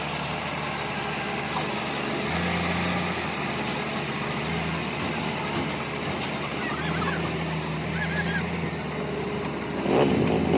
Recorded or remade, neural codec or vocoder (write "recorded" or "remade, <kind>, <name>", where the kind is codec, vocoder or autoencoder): recorded